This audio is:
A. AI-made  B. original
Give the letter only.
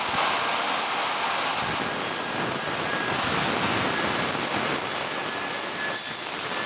B